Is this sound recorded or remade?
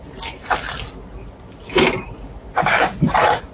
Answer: recorded